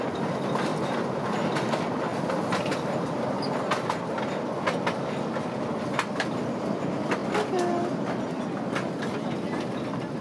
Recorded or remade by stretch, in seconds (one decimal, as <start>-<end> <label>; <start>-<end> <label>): 0.0-0.7 recorded; 0.7-1.2 remade; 1.2-2.1 recorded; 2.1-4.2 remade; 4.2-10.2 recorded